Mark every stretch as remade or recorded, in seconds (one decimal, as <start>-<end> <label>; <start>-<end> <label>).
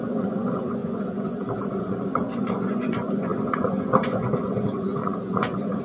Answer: 0.0-5.8 remade